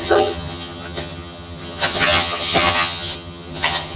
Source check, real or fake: fake